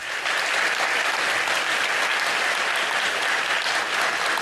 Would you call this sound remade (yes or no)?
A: no